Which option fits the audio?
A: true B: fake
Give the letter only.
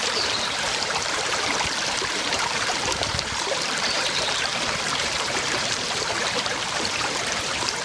B